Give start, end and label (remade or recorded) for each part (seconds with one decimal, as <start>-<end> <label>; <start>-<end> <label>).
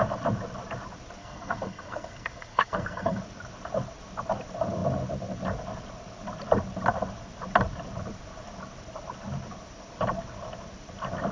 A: 0.0-1.2 recorded; 1.2-3.2 remade; 3.2-11.3 recorded